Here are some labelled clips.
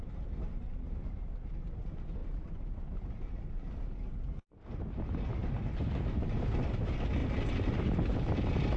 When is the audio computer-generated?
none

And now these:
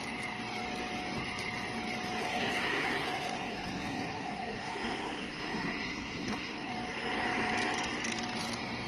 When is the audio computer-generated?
2.2-6.7 (codec, SNAC)